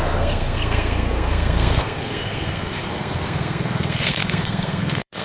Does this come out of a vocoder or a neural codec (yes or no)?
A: yes